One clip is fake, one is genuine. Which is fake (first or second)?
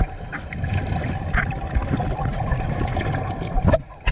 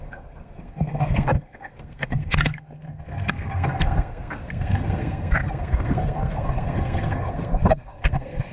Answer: second